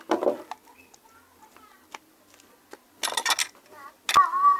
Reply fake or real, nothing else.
real